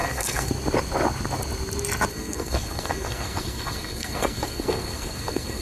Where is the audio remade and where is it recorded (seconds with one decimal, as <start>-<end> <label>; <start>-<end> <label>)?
0.0-0.5 remade; 0.5-2.1 recorded; 2.1-5.6 remade